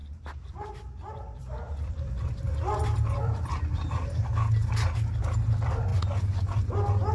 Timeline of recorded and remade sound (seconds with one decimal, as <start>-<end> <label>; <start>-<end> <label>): 0.0-3.5 remade; 3.5-5.2 recorded; 5.2-5.9 remade; 5.9-7.1 recorded